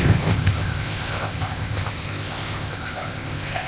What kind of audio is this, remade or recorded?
remade